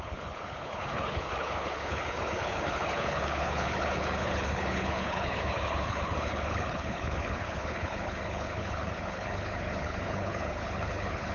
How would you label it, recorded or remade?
remade